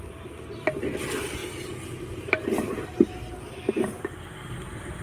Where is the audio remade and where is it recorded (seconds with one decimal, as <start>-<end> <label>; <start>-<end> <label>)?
0.0-5.0 recorded